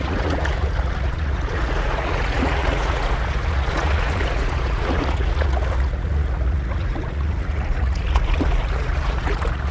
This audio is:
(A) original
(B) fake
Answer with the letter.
B